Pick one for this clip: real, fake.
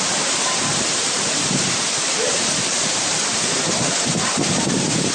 fake